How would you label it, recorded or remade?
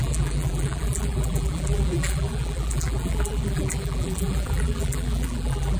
remade